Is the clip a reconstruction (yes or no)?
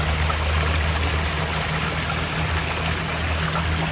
no